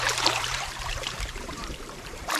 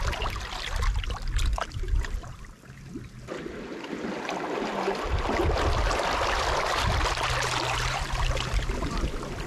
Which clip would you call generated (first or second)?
first